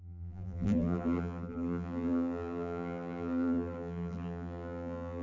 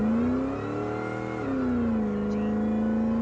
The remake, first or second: first